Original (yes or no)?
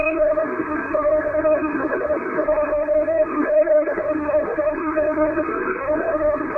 no